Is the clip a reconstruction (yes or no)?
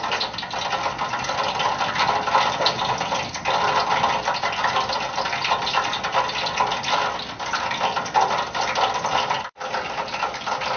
no